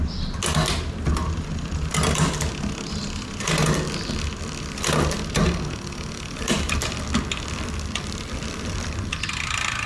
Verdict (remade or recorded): recorded